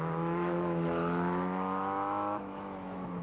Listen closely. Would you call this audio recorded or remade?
remade